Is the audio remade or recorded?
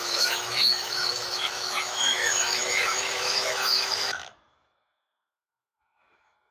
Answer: remade